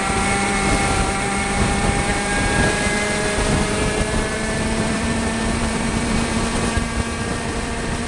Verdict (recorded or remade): remade